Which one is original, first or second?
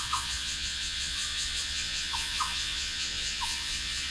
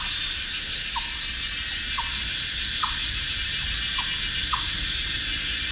second